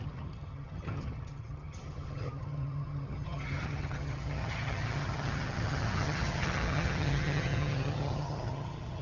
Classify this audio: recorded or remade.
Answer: remade